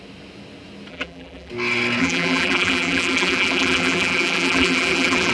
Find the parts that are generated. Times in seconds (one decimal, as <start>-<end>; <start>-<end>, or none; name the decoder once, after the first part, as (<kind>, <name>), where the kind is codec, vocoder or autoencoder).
0.9-1.5 (vocoder, BigVGAN v2); 2.0-5.3